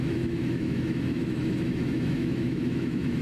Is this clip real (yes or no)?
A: no